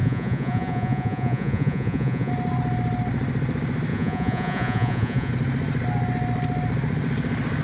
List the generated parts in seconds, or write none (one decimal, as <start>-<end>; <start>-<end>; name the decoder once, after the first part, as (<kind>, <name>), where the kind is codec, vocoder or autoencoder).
0.0-2.3 (vocoder, Vocos); 3.9-5.3